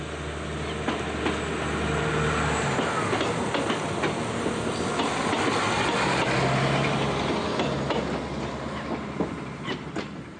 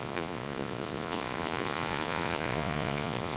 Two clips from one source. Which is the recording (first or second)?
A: first